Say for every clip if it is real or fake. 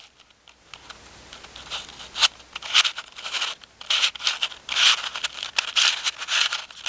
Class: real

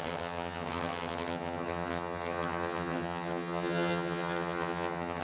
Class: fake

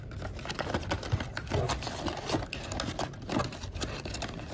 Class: real